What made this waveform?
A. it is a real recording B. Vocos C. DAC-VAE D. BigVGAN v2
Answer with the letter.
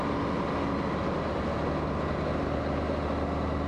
A